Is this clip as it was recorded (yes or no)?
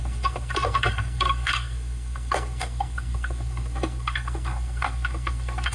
no